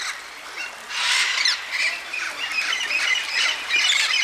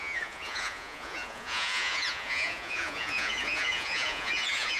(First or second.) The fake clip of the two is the second